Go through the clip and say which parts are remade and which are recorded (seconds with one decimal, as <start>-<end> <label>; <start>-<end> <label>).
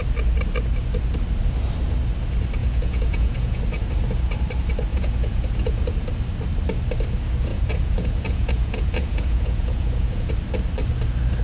0.0-2.6 recorded; 2.6-3.6 remade; 3.6-4.9 recorded; 4.9-6.1 remade; 6.1-7.5 recorded; 7.5-10.3 remade; 10.3-11.4 recorded